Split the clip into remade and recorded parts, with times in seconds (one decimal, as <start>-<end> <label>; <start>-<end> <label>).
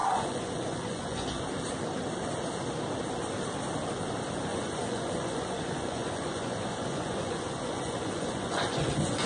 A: 0.0-1.4 remade; 1.4-4.5 recorded; 4.5-9.3 remade